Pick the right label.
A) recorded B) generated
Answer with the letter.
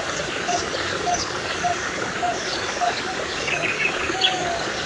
B